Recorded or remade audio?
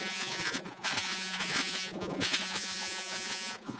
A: remade